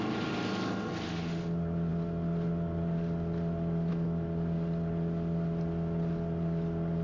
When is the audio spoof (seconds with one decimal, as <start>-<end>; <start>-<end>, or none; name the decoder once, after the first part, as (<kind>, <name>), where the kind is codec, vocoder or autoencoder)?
none